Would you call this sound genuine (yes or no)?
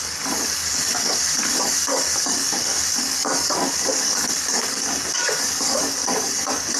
no